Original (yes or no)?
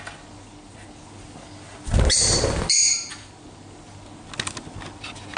yes